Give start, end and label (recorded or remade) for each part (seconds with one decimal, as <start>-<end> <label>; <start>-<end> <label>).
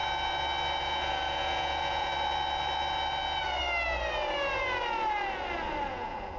0.0-0.8 recorded; 0.8-2.1 remade; 2.1-5.9 recorded; 5.9-6.4 remade